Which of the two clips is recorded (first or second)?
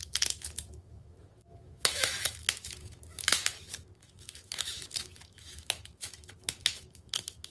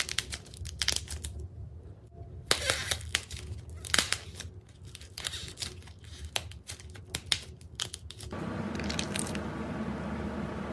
second